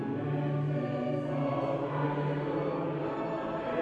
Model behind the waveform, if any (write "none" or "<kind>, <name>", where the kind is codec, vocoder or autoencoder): none